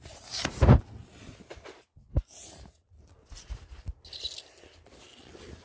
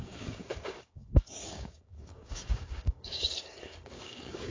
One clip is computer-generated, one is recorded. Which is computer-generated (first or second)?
second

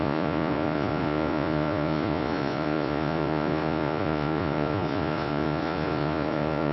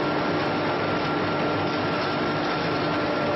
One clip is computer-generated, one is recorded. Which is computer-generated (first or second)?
first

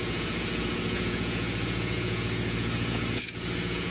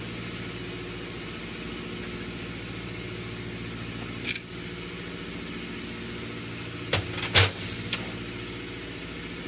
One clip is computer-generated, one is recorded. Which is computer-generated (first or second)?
first